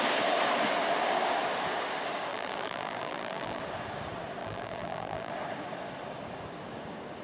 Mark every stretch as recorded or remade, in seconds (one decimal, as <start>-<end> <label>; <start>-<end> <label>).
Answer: 0.0-2.3 recorded; 2.3-3.6 remade; 3.6-4.4 recorded; 4.4-5.3 remade; 5.3-7.2 recorded